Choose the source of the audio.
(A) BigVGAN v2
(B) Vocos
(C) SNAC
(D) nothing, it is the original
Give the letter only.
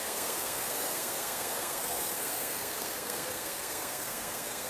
C